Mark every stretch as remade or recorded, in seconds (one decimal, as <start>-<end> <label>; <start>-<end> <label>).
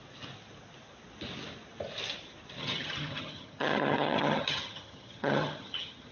0.0-2.6 recorded; 2.6-6.1 remade